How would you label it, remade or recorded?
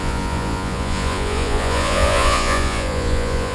remade